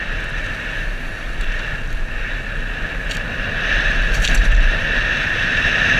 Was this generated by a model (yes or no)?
no